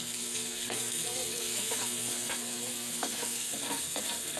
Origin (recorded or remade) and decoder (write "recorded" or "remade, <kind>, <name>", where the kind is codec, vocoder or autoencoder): remade, codec, SNAC